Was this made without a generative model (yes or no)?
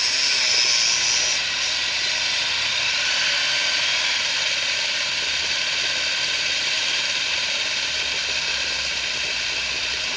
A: yes